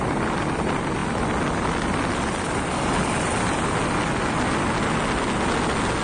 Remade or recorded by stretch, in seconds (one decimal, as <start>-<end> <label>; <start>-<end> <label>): 0.0-6.0 recorded